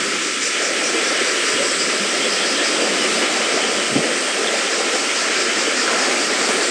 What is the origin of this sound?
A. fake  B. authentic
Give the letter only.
B